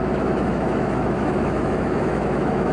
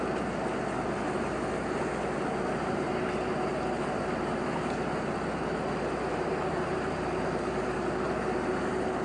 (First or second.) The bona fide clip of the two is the second